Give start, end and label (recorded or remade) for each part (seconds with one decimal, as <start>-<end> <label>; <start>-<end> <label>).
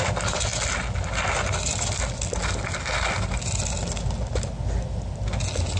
0.0-5.8 recorded